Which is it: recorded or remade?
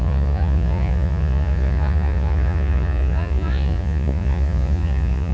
remade